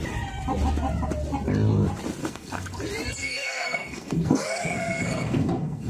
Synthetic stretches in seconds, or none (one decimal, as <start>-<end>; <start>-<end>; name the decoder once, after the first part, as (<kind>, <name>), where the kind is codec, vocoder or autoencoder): 2.2-2.8 (codec, SNAC); 3.2-5.9

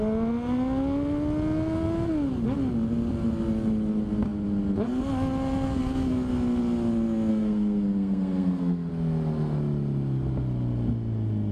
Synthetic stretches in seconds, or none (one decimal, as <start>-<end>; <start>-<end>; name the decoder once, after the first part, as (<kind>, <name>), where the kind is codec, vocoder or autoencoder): 7.3-8.9 (codec, SNAC)

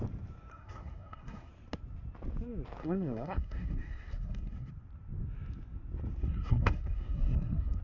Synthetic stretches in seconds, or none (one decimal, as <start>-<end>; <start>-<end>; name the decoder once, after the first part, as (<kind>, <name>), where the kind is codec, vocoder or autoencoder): 0.5-1.5 (codec, SNAC); 2.8-4.7; 6.2-7.8

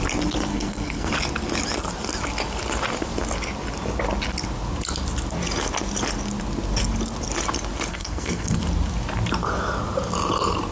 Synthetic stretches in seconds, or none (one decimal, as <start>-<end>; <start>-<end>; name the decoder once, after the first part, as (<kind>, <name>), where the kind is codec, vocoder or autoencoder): 0.5-1.1 (codec, SNAC); 7.9-8.6

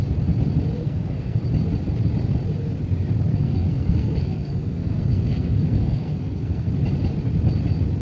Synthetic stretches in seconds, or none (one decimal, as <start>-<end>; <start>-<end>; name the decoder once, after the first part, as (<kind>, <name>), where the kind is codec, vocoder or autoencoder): 0.8-1.4 (codec, SNAC); 3.3-6.7